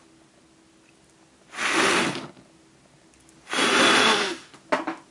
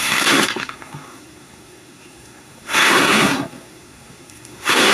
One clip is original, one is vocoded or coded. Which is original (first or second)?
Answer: first